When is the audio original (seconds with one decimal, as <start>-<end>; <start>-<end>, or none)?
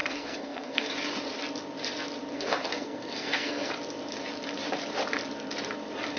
0.9-2.3; 3.7-6.2